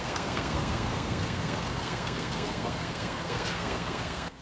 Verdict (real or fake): fake